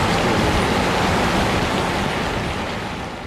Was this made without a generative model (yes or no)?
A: yes